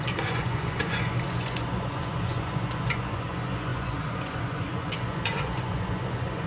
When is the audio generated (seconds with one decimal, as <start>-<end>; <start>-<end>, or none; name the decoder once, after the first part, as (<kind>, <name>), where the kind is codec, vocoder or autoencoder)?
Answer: 0.0-6.5 (vocoder, Vocos)